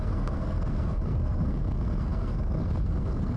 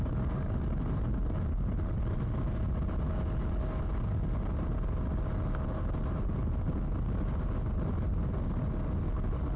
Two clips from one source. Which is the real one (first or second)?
second